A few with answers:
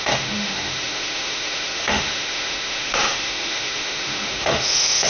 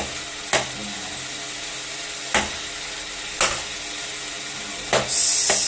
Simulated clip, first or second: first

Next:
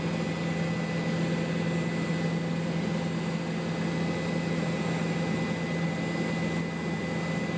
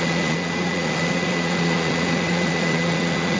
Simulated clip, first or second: second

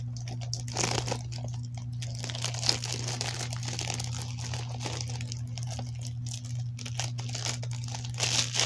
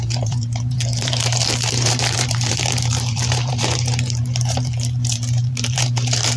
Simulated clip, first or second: second